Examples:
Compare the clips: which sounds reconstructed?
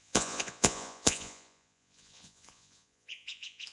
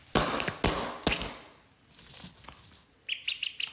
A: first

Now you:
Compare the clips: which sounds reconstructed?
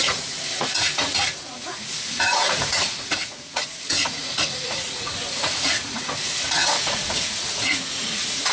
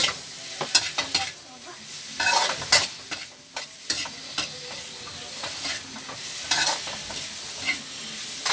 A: first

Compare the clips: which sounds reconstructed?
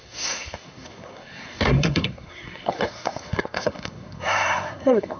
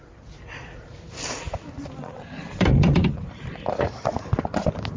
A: first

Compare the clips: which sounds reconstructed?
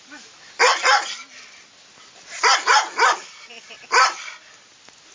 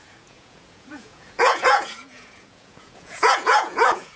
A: second